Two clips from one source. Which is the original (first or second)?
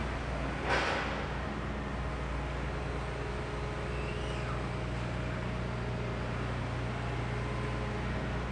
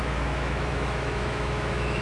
first